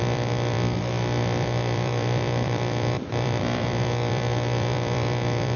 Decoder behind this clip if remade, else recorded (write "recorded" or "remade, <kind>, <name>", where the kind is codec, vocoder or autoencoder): remade, vocoder, BigVGAN v2